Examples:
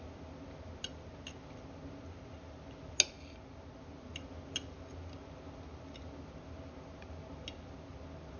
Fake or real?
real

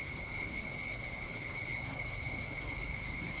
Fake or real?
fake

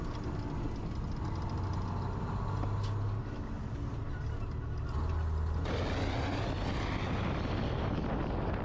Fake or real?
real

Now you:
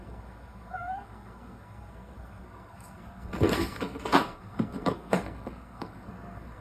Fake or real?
fake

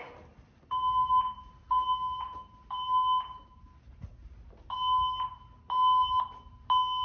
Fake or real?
real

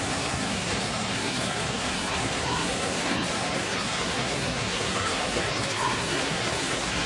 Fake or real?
fake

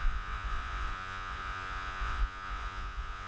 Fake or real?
fake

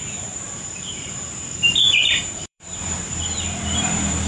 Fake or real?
fake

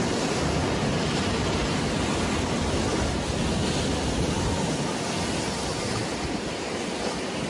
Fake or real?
real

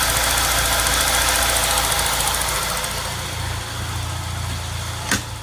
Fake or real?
real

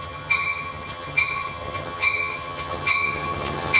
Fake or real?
fake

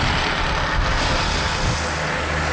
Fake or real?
real